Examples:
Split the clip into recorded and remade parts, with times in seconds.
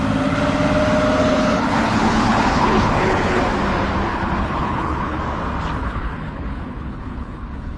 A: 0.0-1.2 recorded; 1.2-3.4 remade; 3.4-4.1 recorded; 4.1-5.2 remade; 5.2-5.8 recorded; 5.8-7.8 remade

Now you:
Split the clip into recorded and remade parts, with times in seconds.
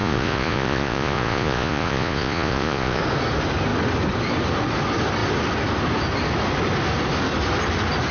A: 0.0-3.0 remade; 3.0-8.1 recorded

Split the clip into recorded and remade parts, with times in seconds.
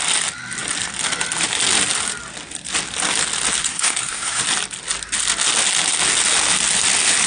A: 0.0-3.7 recorded; 3.7-4.4 remade; 4.4-7.3 recorded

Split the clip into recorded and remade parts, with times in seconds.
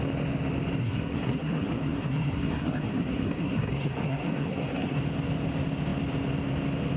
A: 0.0-0.8 recorded; 0.8-5.0 remade; 5.0-7.0 recorded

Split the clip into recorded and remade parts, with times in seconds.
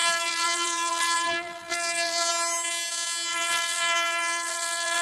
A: 0.0-2.3 remade; 2.3-3.3 recorded; 3.3-5.0 remade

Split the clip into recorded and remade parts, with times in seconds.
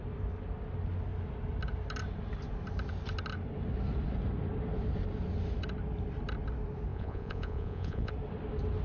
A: 0.0-6.9 recorded; 6.9-8.1 remade; 8.1-8.8 recorded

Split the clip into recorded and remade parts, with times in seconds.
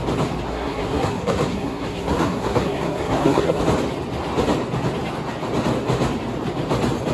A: 0.0-0.5 recorded; 0.5-3.6 remade; 3.6-7.1 recorded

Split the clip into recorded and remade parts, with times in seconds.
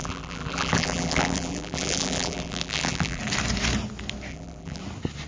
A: 0.0-3.2 remade; 3.2-4.3 recorded; 4.3-4.8 remade; 4.8-5.3 recorded